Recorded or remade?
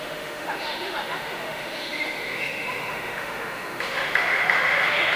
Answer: remade